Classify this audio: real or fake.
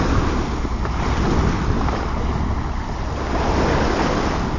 real